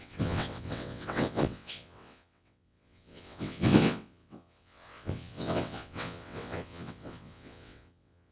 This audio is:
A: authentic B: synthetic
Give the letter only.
B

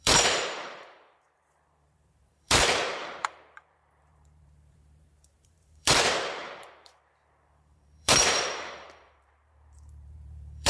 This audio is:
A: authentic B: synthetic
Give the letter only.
B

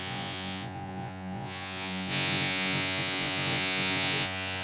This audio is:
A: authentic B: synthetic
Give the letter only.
B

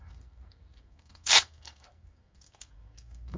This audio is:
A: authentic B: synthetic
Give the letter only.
B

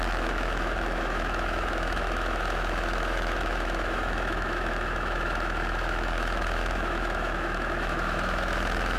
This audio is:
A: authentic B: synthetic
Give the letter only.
B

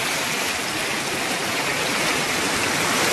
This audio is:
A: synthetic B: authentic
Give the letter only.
B